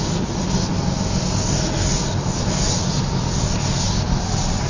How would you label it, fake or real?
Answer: real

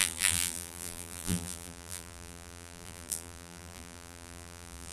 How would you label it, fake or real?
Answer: fake